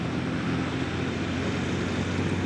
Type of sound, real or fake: real